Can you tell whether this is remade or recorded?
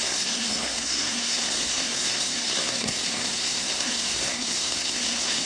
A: remade